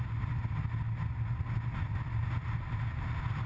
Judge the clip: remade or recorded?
recorded